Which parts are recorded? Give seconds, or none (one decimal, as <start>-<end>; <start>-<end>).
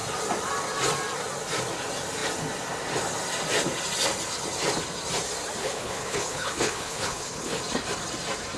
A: 0.0-5.6; 7.6-8.6